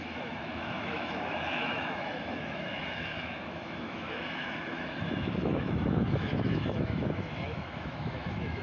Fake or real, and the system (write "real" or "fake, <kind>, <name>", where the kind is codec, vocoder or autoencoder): fake, autoencoder, DAC-VAE